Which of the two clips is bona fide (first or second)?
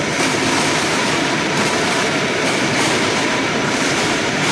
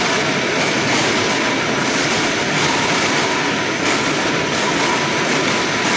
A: second